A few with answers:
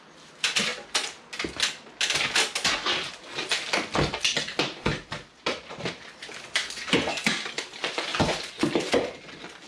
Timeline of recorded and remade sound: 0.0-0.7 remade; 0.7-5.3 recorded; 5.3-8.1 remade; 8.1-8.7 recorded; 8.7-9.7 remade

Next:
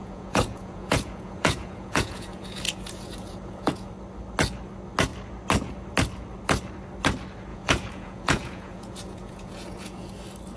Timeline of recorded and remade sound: 0.0-3.9 remade; 3.9-7.5 recorded; 7.5-10.1 remade; 10.1-10.6 recorded

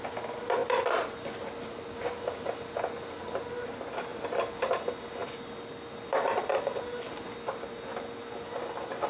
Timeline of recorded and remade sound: 0.0-0.6 recorded; 0.6-1.5 remade; 1.5-4.1 recorded; 4.1-4.7 remade; 4.7-9.1 recorded

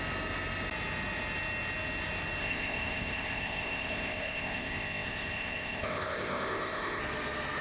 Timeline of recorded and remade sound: 0.0-2.4 recorded; 2.4-7.0 remade; 7.0-7.6 recorded

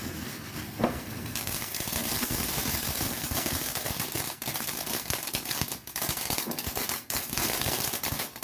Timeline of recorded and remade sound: 0.0-8.4 remade